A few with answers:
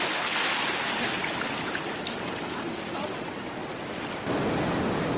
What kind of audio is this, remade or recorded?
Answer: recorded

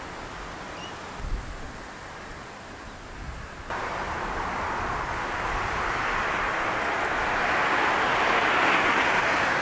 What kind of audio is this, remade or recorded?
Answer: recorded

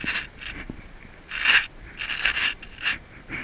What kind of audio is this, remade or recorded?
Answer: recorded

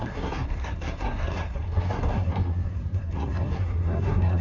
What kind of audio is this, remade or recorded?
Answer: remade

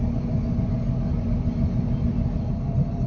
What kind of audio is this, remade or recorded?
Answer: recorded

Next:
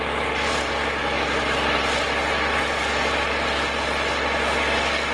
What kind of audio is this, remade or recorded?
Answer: recorded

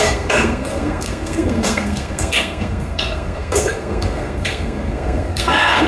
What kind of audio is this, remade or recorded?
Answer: remade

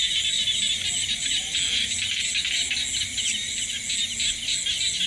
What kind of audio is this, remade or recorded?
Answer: recorded